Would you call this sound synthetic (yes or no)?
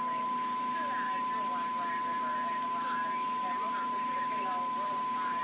no